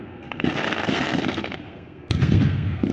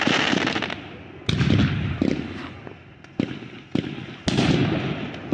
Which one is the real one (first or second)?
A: second